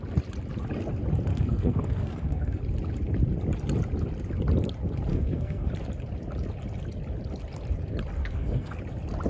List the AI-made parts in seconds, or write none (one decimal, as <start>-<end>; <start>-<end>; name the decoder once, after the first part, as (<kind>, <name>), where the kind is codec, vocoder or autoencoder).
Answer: 1.3-2.6 (codec, SNAC); 5.1-5.7; 8.2-8.8